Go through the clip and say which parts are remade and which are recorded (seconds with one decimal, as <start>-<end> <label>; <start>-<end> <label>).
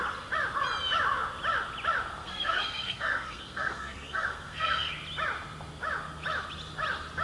0.0-2.2 recorded; 2.2-4.9 remade; 4.9-7.2 recorded